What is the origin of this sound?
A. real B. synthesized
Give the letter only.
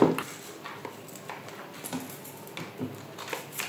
A